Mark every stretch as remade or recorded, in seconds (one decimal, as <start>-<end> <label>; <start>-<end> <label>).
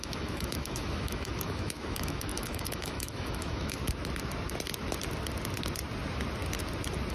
0.0-3.8 remade; 3.8-7.1 recorded